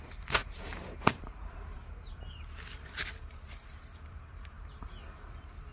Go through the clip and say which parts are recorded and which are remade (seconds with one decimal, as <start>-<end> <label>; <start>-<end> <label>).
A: 0.0-0.4 recorded; 0.4-2.1 remade; 2.1-3.2 recorded; 3.2-4.7 remade; 4.7-5.7 recorded

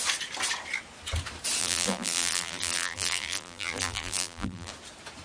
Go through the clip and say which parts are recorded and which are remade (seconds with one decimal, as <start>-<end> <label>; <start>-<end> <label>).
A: 0.0-1.6 recorded; 1.6-4.7 remade; 4.7-5.2 recorded